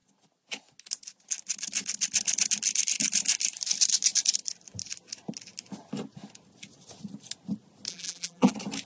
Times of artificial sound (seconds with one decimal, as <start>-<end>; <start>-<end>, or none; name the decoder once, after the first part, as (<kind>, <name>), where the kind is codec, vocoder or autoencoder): 7.9-8.5 (vocoder, BigVGAN v2)